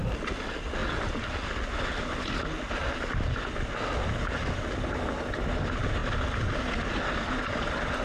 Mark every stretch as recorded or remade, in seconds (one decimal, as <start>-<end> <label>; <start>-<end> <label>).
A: 0.0-8.0 recorded